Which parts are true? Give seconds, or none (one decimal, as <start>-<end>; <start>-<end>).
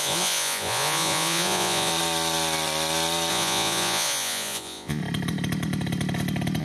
1.9-3.3; 5.0-6.6